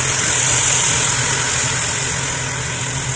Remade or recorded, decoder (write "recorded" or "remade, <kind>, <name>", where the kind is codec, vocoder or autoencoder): recorded